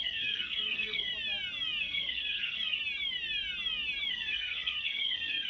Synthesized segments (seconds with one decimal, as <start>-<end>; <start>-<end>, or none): 0.0-1.1; 1.8-2.8; 4.1-5.5